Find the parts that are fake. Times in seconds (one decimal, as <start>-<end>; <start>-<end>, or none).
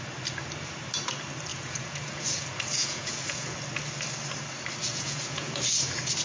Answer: 1.5-3.6; 4.8-5.5